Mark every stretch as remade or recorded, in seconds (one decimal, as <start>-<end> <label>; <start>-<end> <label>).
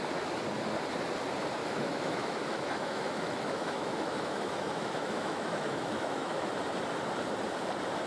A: 0.0-1.6 recorded; 1.6-6.5 remade; 6.5-8.1 recorded